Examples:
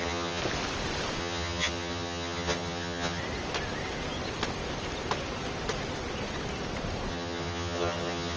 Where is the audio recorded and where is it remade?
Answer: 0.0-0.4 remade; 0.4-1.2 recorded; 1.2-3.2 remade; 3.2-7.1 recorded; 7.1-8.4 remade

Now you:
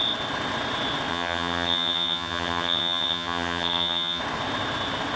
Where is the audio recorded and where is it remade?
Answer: 0.0-1.1 recorded; 1.1-4.2 remade; 4.2-5.2 recorded

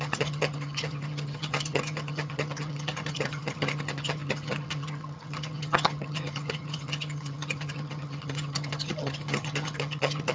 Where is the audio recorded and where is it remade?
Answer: 0.0-10.3 remade

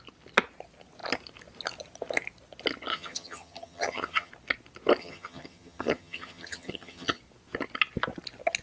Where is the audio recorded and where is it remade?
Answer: 0.0-2.9 recorded; 2.9-4.3 remade; 4.3-5.0 recorded; 5.0-7.2 remade; 7.2-8.6 recorded

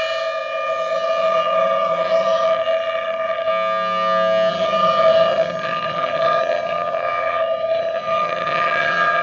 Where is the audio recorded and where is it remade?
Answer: 0.0-3.5 remade; 3.5-4.5 recorded; 4.5-9.2 remade